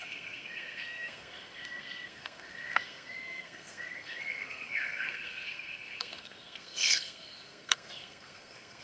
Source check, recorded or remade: remade